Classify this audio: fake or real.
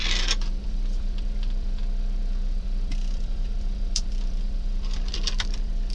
fake